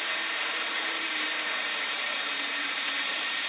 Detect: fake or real fake